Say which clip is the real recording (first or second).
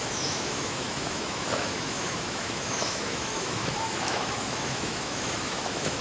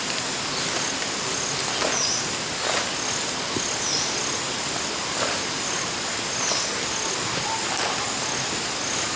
second